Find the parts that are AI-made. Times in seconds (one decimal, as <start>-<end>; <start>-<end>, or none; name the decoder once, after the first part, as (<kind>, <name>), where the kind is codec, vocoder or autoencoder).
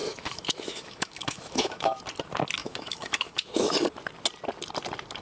0.0-2.0 (autoencoder, DAC-VAE); 2.6-3.7